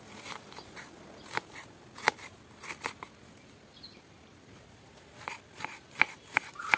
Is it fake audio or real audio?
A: real